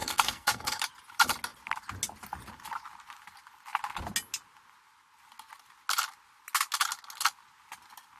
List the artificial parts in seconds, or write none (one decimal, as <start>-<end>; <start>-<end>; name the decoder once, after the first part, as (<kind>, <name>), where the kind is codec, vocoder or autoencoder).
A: 0.0-0.8 (codec, SNAC)